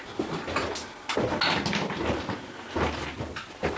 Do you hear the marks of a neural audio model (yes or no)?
no